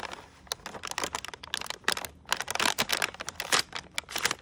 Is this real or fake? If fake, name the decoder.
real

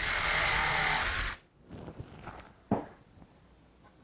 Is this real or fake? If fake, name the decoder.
real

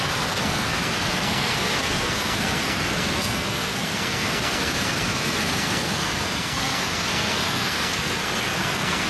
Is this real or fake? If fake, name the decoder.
fake, codec, SNAC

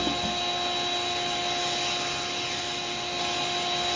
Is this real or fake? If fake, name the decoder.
real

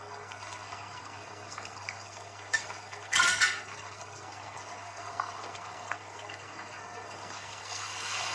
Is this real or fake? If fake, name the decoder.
fake, codec, SNAC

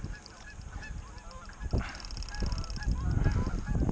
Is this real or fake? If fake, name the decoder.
real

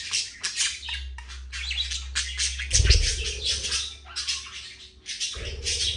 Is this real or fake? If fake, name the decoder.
real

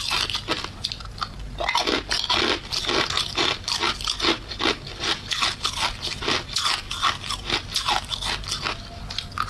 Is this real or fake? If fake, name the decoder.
real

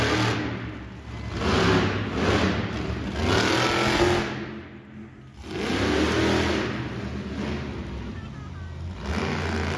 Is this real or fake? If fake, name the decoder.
real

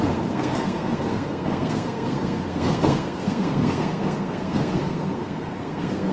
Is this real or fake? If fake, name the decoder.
fake, codec, SNAC